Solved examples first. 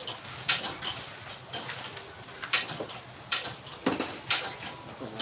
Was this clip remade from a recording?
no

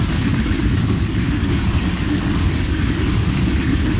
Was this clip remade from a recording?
yes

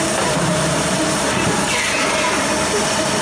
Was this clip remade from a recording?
yes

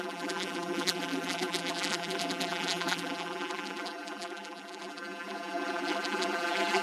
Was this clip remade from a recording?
yes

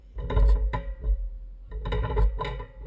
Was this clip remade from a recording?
no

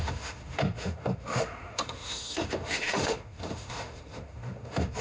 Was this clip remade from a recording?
yes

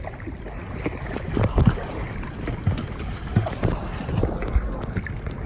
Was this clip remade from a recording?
no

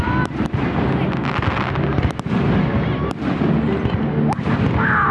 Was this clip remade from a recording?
no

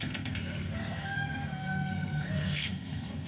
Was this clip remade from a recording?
yes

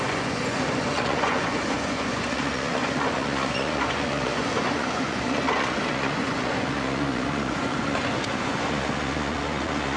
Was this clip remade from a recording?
yes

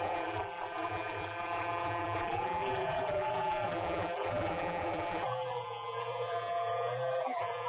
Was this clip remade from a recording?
yes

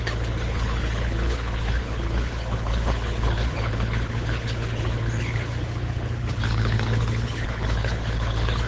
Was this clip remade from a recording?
yes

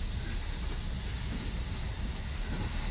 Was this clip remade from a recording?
no